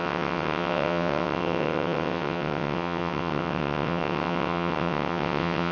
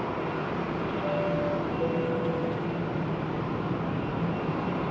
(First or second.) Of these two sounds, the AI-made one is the first